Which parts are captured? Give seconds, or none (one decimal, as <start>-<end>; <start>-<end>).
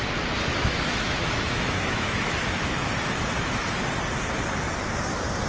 0.0-0.5; 3.8-5.5